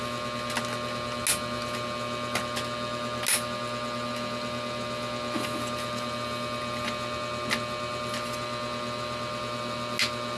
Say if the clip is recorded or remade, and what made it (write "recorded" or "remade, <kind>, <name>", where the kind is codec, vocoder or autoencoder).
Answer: recorded